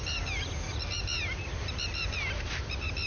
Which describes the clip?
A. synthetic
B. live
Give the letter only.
B